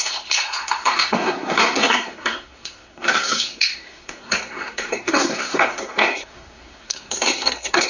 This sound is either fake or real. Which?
fake